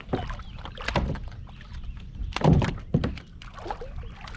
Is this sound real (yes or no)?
yes